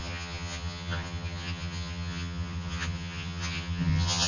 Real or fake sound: fake